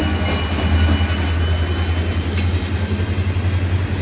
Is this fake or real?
real